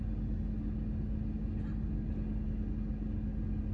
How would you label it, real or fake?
real